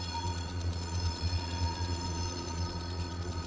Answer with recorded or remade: remade